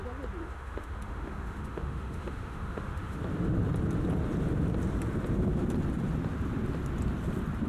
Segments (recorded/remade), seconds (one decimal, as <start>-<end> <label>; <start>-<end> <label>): 0.0-0.4 recorded; 0.4-3.2 remade; 3.2-7.7 recorded